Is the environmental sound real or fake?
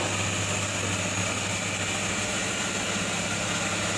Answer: real